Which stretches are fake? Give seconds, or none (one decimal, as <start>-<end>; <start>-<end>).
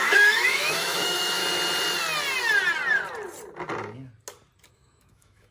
0.0-1.4; 4.7-5.5